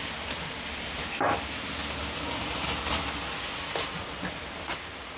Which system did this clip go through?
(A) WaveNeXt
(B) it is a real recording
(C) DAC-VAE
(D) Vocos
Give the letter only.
B